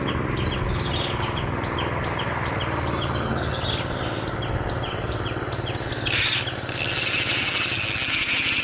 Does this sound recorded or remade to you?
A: recorded